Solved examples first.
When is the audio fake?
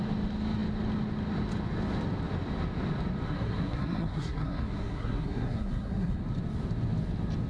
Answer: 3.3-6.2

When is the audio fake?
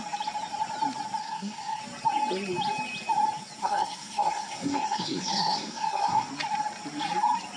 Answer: 1.2-1.8; 3.6-6.3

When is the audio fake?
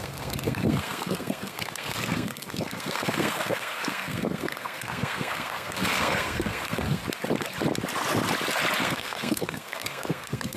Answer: 0.0-7.0; 8.8-10.6